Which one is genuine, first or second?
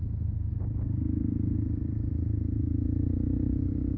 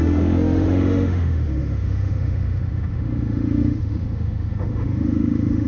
first